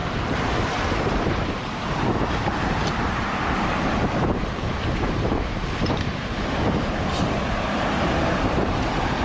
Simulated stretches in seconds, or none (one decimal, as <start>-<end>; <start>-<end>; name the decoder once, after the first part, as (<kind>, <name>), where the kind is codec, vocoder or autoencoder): 0.0-9.2 (vocoder, BigVGAN v2)